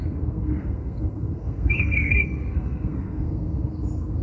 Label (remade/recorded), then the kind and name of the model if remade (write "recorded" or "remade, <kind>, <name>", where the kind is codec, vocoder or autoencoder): remade, codec, SNAC